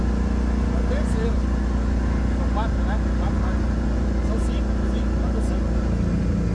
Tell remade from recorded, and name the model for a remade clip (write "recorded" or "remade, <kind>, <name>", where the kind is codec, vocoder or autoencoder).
recorded